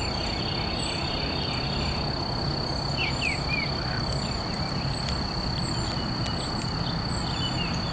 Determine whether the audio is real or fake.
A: real